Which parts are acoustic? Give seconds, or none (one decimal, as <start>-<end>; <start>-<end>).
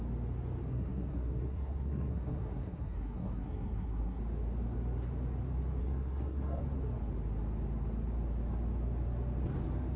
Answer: 0.0-0.7; 4.2-5.8; 6.6-10.0